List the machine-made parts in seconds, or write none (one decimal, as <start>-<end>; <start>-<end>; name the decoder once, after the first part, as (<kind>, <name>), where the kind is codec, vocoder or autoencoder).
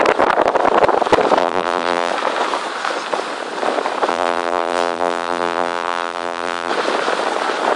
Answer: 1.4-2.1 (vocoder, BigVGAN v2); 4.1-6.7